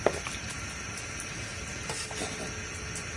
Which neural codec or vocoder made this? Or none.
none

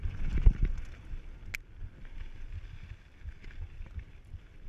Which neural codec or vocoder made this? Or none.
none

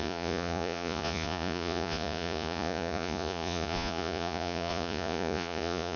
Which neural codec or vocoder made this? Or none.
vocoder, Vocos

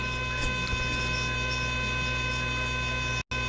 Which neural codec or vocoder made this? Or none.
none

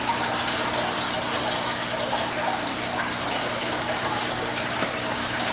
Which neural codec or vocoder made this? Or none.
none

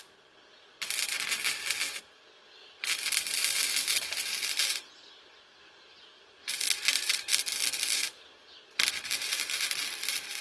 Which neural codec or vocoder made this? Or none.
none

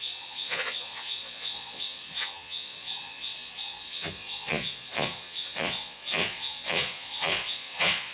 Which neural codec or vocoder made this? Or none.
vocoder, Vocos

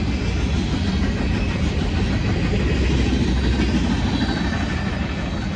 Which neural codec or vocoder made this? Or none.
none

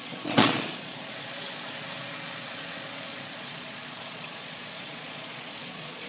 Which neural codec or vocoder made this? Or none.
vocoder, Vocos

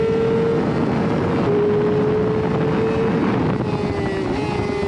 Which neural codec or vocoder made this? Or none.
none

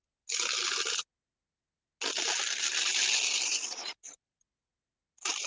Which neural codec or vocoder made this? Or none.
none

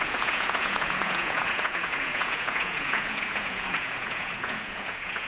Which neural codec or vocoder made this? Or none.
vocoder, Vocos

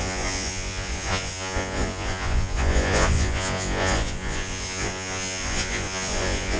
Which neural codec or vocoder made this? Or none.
vocoder, Vocos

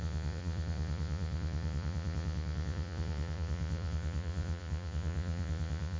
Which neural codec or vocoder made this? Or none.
vocoder, Vocos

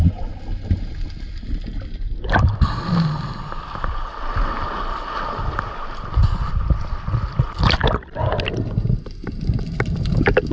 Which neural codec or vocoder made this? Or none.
none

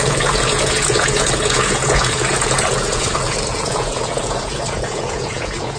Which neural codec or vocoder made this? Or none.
vocoder, Vocos